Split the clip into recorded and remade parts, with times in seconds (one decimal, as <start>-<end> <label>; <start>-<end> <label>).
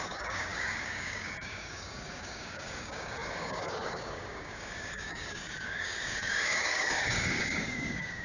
0.0-8.2 remade